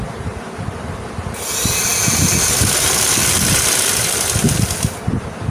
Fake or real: real